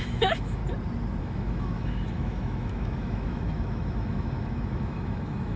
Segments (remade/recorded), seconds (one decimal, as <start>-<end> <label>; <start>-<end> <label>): 0.0-0.6 remade; 0.6-1.2 recorded; 1.2-5.6 remade